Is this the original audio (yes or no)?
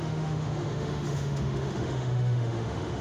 no